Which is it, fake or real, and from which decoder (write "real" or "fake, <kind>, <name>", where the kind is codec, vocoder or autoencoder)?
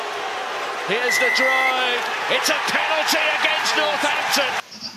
real